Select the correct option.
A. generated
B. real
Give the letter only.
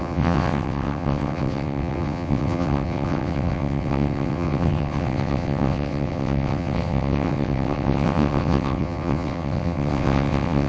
A